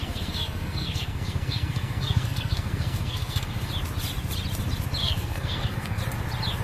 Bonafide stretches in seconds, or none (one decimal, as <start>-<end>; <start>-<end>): 3.7-5.0; 6.0-6.6